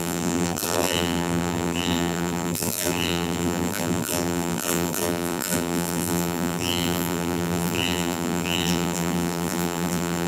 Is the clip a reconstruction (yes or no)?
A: yes